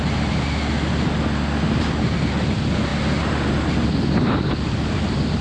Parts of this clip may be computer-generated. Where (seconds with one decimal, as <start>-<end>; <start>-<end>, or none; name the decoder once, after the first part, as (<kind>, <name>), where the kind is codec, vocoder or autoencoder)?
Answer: none